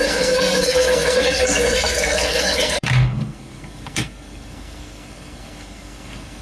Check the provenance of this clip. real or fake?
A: fake